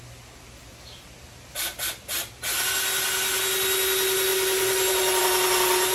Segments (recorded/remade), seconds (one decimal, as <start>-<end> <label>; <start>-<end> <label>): 0.0-5.9 recorded